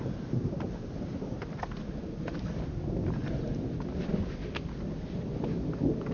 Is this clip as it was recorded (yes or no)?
yes